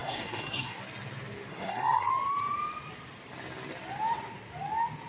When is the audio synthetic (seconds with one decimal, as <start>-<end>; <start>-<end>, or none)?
0.0-0.8; 1.5-2.1

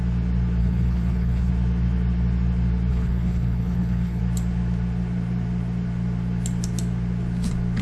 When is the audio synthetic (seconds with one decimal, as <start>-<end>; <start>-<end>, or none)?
0.6-1.5; 2.9-4.2

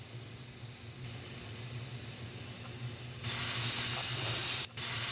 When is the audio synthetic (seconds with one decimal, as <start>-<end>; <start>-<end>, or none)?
4.4-5.1

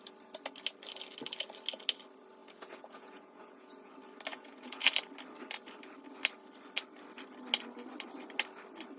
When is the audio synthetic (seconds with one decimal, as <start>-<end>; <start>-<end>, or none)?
2.4-3.9; 4.3-4.9

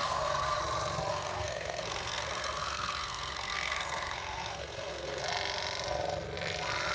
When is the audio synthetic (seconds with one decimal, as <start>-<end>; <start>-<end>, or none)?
0.0-0.6; 1.1-5.2